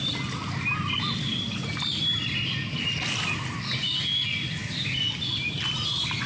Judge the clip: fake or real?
real